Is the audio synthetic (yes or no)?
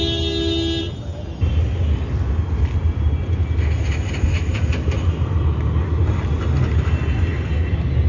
no